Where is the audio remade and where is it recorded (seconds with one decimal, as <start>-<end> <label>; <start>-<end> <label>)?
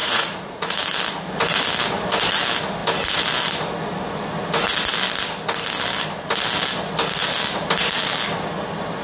0.0-0.7 remade; 0.7-9.0 recorded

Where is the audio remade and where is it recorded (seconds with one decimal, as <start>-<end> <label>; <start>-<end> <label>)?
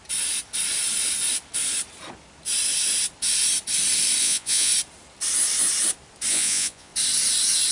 0.0-4.2 recorded; 4.2-4.7 remade; 4.7-6.3 recorded; 6.3-6.9 remade; 6.9-7.7 recorded